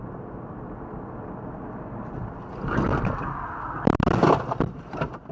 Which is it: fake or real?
real